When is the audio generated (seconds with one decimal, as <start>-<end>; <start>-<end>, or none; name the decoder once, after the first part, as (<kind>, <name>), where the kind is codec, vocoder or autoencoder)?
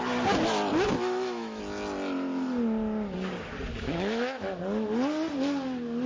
0.7-1.6 (autoencoder, DAC-VAE); 3.7-4.6